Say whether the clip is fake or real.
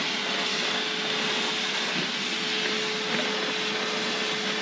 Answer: real